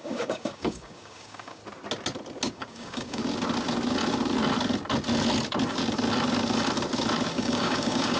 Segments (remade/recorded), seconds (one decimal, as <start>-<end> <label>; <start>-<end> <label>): 0.0-1.6 remade; 1.6-2.5 recorded; 2.5-3.2 remade; 3.2-7.3 recorded; 7.3-8.2 remade